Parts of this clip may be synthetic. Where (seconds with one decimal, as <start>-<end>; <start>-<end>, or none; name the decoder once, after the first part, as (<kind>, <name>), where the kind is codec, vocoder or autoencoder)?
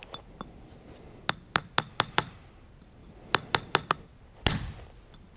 none